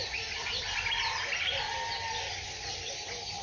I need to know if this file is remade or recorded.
recorded